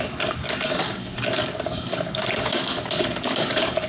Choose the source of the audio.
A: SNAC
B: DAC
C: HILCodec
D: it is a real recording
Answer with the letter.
B